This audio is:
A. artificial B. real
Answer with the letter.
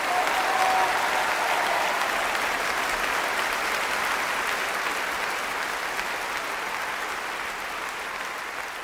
B